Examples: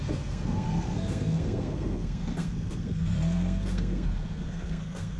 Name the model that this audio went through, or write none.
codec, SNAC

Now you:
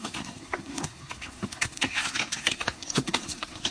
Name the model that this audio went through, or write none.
codec, SNAC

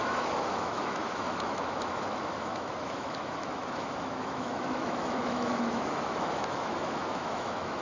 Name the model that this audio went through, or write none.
autoencoder, DAC-VAE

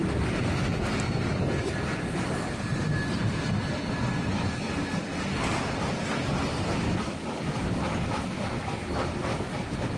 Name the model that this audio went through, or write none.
none